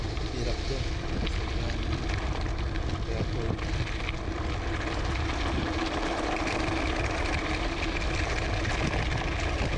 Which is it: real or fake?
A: real